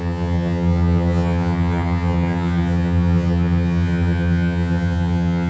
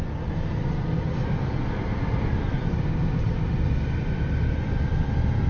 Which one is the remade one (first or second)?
first